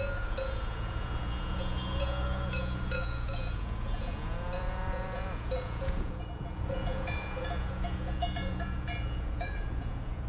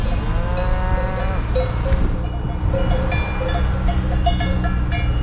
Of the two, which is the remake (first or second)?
first